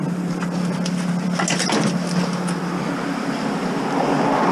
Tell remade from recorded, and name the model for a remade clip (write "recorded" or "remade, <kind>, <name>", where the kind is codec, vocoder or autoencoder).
recorded